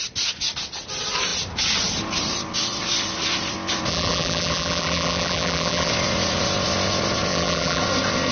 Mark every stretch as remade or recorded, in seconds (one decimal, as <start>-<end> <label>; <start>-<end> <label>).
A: 0.0-3.9 recorded; 3.9-5.9 remade; 5.9-7.3 recorded; 7.3-7.8 remade; 7.8-8.3 recorded